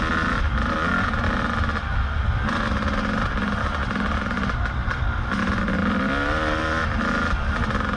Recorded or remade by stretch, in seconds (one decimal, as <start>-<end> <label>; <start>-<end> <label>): 0.0-8.0 recorded